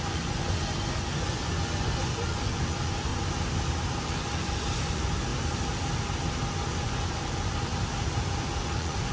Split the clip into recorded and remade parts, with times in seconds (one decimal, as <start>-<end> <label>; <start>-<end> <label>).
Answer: 0.0-3.1 remade; 3.1-4.0 recorded; 4.0-5.3 remade; 5.3-6.5 recorded; 6.5-7.7 remade; 7.7-8.6 recorded; 8.6-9.1 remade